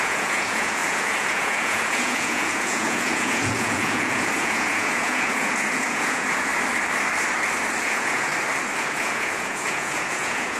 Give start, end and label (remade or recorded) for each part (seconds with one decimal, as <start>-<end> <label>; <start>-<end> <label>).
0.0-6.5 remade; 6.5-7.8 recorded; 7.8-8.3 remade; 8.3-8.8 recorded; 8.8-10.6 remade